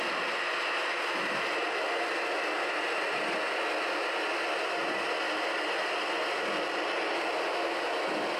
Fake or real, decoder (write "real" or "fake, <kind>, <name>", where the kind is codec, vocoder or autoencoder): real